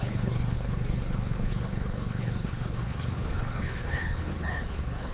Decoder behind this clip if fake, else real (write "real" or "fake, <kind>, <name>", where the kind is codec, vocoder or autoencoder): fake, codec, HILCodec